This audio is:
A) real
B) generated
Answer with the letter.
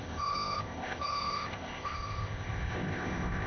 B